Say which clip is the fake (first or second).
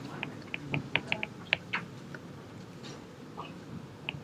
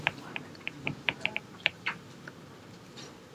second